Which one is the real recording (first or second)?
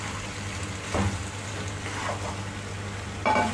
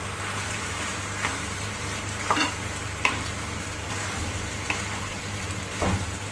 first